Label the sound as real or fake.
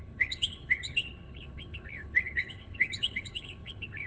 fake